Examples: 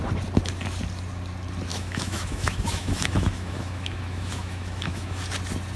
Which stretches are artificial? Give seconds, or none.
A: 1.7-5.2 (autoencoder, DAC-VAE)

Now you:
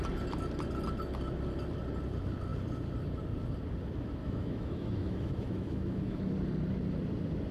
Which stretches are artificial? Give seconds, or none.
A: 4.2-6.2 (autoencoder, DAC-VAE)